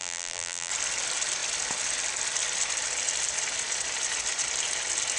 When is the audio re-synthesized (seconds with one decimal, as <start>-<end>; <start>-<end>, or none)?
0.0-0.7